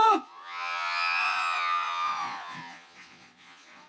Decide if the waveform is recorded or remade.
remade